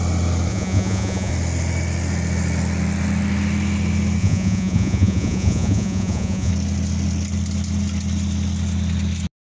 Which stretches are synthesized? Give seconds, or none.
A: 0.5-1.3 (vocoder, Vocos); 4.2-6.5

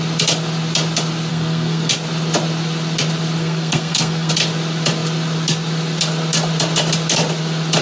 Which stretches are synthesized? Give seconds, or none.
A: 1.3-1.9 (codec, SNAC); 3.4-4.3

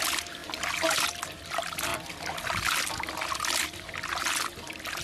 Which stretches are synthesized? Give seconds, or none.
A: none

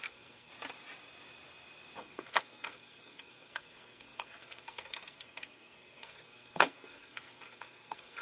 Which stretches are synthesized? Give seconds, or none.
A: 0.0-0.5 (codec, SNAC); 2.0-8.2